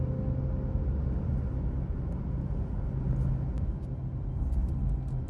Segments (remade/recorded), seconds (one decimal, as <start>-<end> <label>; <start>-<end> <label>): 0.0-4.6 recorded; 4.6-5.3 remade